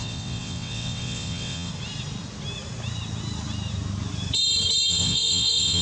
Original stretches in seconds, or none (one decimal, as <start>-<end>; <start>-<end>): 1.7-4.9